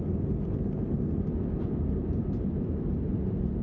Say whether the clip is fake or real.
real